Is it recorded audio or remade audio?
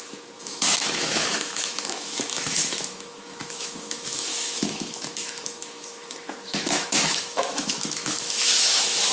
remade